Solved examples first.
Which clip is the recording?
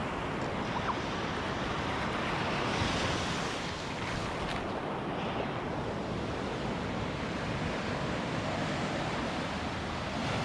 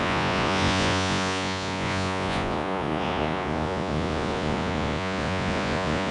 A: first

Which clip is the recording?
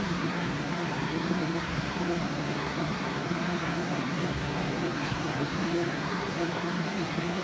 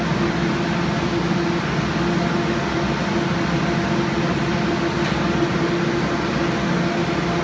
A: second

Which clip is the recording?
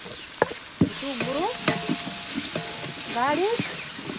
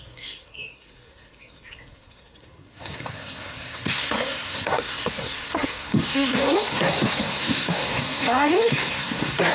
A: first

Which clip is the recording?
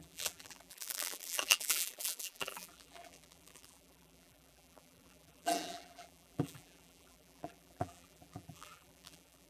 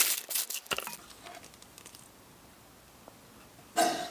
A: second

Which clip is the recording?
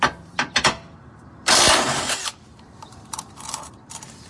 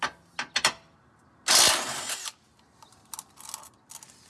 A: second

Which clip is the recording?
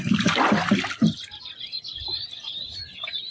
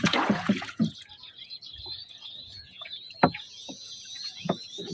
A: first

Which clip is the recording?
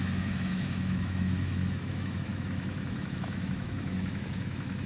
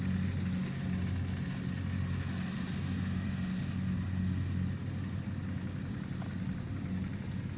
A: second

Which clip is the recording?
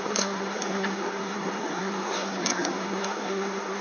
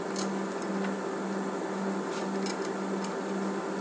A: second